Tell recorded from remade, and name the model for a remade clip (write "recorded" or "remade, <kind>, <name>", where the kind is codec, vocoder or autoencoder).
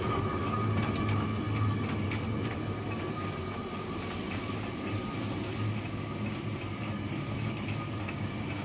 recorded